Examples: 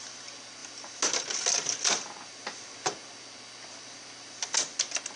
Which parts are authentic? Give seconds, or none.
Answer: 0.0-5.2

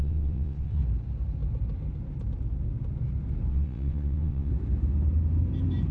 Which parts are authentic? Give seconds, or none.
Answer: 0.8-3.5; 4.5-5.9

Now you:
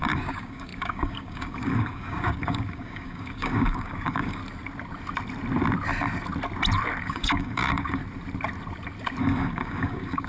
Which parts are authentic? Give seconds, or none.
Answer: 4.4-7.0; 8.0-9.2